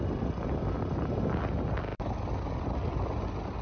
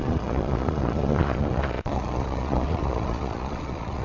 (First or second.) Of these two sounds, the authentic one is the first